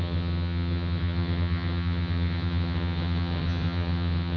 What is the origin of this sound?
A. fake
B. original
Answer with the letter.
A